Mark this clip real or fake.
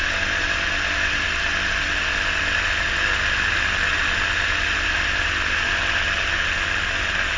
real